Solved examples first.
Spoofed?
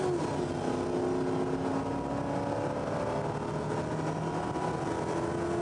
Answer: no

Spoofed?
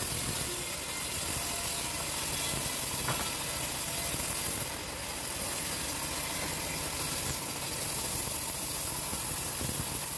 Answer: no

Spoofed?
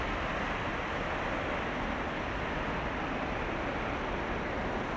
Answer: no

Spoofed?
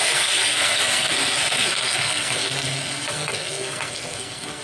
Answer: yes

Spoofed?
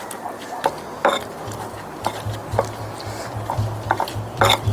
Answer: no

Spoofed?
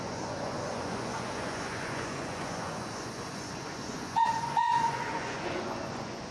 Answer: yes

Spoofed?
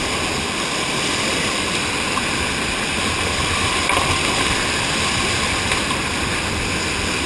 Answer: no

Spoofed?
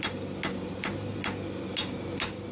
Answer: no